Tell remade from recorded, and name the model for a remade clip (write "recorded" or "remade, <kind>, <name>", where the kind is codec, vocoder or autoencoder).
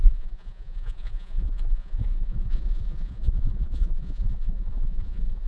remade, vocoder, Vocos